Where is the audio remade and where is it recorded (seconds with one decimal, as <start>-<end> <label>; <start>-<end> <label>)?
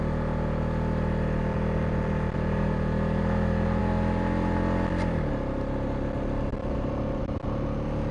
0.0-8.1 recorded